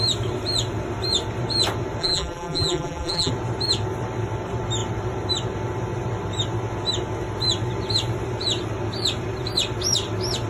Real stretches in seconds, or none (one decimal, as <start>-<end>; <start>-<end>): 0.0-2.0; 3.3-10.5